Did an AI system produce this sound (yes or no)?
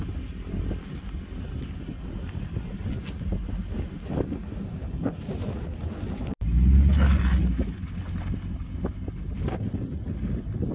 no